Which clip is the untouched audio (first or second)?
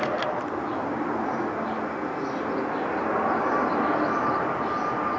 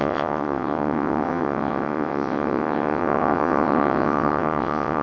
first